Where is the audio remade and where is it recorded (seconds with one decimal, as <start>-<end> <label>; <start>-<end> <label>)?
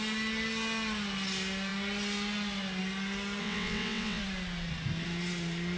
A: 0.0-3.4 recorded; 3.4-4.2 remade; 4.2-5.8 recorded